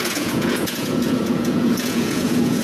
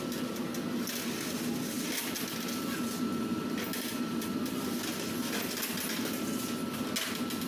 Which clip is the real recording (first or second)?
second